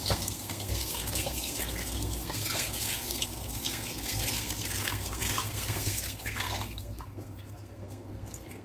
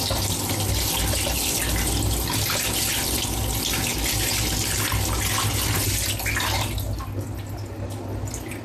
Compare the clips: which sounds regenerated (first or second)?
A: first